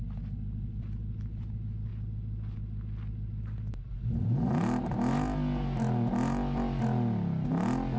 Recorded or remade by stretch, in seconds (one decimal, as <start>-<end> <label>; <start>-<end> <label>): 0.0-8.0 recorded